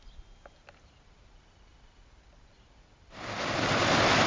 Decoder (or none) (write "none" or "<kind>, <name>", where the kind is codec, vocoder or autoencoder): none